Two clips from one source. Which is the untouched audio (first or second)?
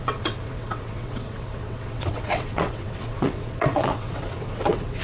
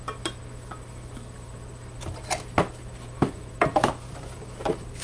second